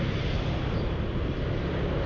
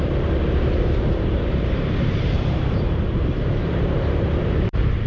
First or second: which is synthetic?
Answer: second